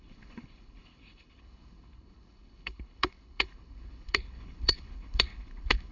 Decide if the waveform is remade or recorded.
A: remade